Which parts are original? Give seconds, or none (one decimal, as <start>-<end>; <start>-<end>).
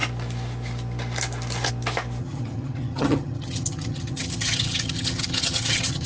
0.0-2.2